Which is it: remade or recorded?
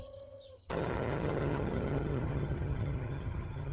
remade